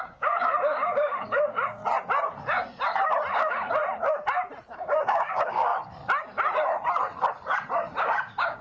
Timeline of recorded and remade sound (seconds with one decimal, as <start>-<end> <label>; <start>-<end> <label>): 0.0-1.8 remade; 1.8-3.3 recorded; 3.3-3.8 remade; 3.8-4.7 recorded; 4.7-5.7 remade; 5.7-8.0 recorded; 8.0-8.6 remade